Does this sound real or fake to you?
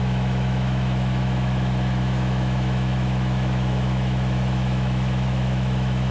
fake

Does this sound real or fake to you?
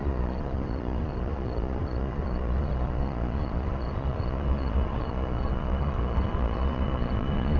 fake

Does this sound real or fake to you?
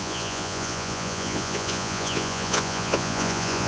fake